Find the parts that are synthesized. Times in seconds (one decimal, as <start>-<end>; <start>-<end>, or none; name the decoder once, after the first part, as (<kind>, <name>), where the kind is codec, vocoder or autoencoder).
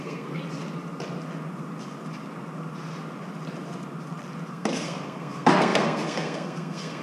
0.0-0.4 (codec, SNAC); 4.5-7.0